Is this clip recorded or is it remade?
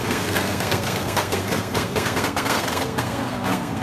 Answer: remade